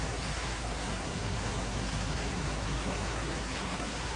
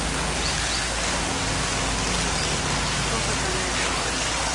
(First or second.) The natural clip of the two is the second